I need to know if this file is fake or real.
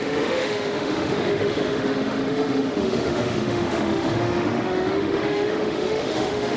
fake